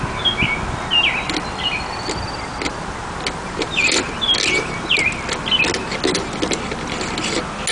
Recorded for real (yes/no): yes